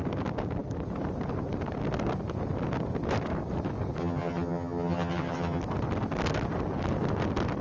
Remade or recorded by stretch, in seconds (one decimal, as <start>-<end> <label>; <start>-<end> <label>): 0.0-4.0 recorded; 4.0-5.6 remade; 5.6-7.6 recorded